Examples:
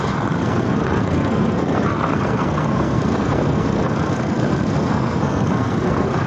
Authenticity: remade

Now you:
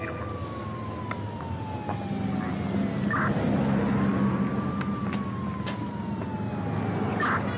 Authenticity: recorded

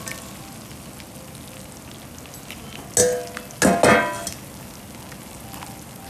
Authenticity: recorded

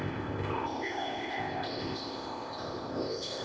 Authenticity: remade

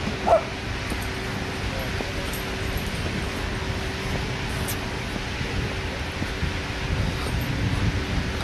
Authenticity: recorded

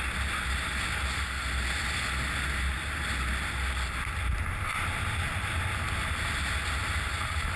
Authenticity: recorded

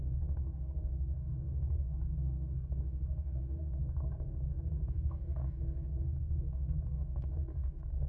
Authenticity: remade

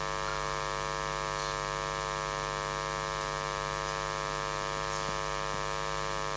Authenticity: recorded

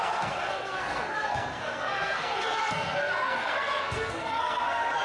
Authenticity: remade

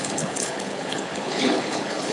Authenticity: remade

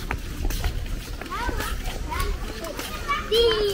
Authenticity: recorded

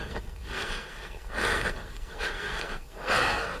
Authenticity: remade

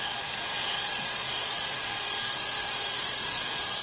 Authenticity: remade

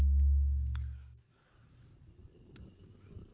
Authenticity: recorded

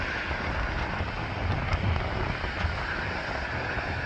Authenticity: recorded